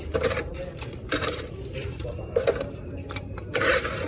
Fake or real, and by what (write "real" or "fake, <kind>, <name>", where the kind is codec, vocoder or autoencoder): fake, vocoder, BigVGAN v2